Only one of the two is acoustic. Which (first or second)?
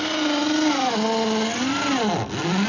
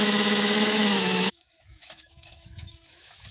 first